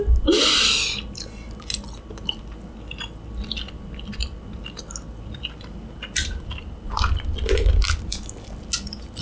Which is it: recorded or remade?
recorded